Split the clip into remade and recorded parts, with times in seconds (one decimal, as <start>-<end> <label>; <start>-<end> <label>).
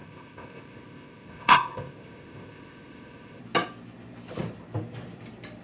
0.0-3.4 remade; 3.4-5.6 recorded